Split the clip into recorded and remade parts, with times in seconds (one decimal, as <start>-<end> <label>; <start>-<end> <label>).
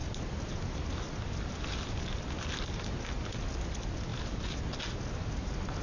0.0-5.8 recorded